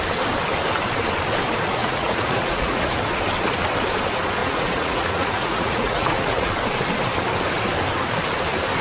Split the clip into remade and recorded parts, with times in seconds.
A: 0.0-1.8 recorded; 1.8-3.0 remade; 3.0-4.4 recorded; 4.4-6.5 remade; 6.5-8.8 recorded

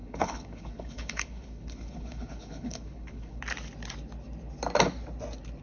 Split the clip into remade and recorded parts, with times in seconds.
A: 0.0-3.4 remade; 3.4-5.6 recorded